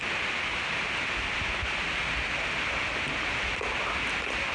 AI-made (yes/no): no